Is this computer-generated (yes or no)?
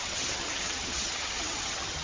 yes